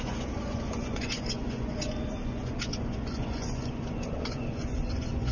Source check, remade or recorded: remade